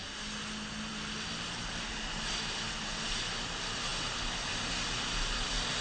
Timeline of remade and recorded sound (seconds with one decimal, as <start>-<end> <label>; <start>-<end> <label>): 0.0-5.8 recorded